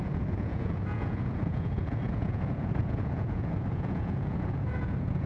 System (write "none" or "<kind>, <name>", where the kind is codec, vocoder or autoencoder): vocoder, Vocos